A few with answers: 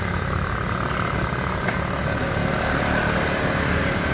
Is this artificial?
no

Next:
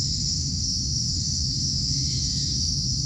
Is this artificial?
yes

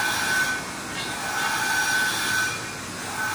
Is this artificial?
no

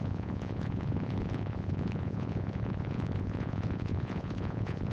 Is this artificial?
yes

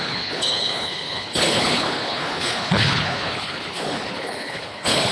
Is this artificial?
yes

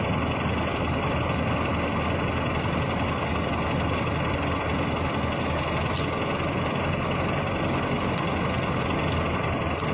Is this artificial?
no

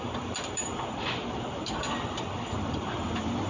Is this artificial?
yes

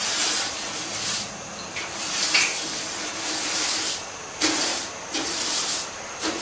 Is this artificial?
yes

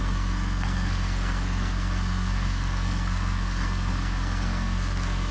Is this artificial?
yes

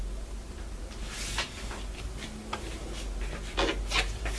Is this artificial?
no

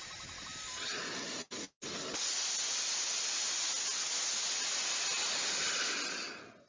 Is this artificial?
no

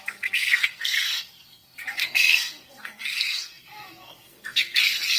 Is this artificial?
yes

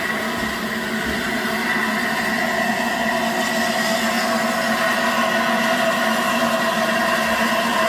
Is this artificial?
no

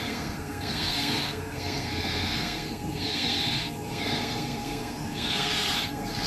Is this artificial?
yes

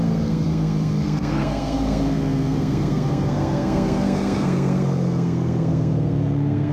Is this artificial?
yes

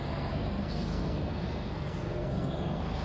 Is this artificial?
yes